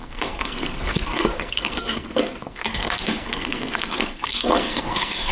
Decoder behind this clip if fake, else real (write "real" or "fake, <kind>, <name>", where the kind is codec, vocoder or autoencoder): fake, codec, SNAC